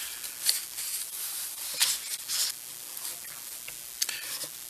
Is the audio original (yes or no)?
yes